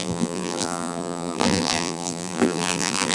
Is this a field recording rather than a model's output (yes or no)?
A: no